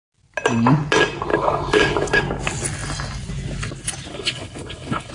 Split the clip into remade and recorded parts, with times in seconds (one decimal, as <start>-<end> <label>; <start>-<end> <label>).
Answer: 0.0-1.3 recorded; 1.3-2.2 remade; 2.2-4.1 recorded; 4.1-5.1 remade